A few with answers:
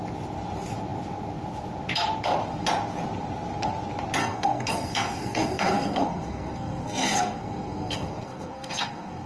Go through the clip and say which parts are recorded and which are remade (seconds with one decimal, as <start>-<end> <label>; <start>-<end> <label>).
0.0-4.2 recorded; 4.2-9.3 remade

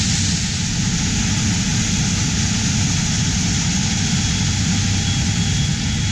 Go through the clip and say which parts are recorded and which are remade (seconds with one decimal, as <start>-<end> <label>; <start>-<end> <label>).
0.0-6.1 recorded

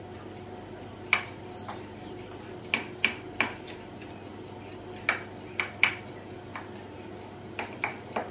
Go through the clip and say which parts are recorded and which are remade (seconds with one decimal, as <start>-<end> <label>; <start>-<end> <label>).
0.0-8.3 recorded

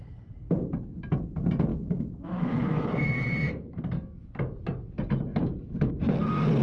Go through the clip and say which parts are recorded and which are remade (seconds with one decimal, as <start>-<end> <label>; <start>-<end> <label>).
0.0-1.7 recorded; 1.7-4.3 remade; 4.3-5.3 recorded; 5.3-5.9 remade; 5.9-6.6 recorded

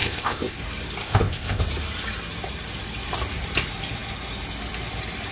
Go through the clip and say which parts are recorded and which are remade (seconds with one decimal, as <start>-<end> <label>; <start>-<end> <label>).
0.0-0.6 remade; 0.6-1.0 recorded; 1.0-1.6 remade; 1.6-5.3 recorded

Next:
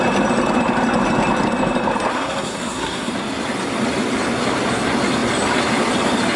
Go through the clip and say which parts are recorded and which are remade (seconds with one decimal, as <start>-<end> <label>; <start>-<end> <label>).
0.0-2.1 recorded; 2.1-3.1 remade; 3.1-6.4 recorded

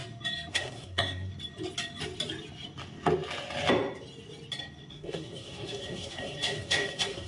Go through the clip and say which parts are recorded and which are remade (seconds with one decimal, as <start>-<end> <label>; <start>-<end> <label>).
0.0-0.5 recorded; 0.5-1.3 remade; 1.3-4.9 recorded; 4.9-7.3 remade